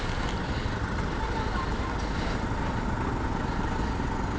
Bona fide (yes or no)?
yes